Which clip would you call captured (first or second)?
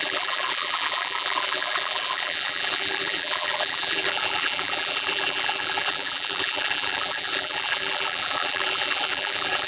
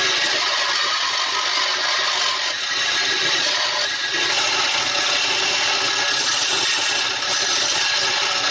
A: second